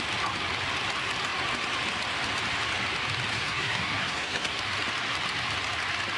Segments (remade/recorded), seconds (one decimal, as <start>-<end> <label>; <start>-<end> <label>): 0.0-3.3 recorded; 3.3-4.6 remade; 4.6-6.2 recorded